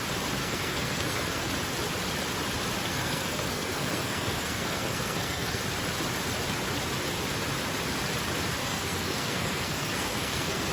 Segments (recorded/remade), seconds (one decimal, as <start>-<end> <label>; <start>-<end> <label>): 0.0-0.4 recorded; 0.4-1.5 remade; 1.5-2.9 recorded; 2.9-5.6 remade; 5.6-8.6 recorded; 8.6-10.7 remade